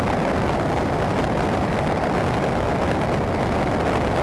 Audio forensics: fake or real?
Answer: real